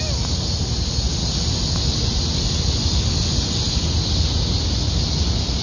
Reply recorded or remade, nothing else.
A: recorded